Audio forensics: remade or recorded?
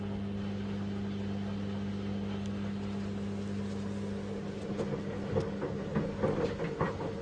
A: recorded